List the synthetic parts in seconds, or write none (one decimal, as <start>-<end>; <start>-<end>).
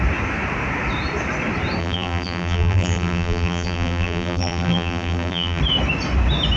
1.8-5.6